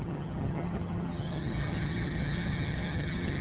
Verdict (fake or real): fake